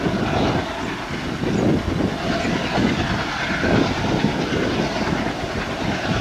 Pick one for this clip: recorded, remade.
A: recorded